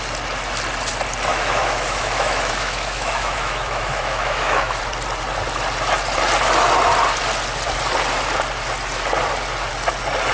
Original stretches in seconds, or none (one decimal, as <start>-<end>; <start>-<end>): 0.0-1.3; 4.8-10.3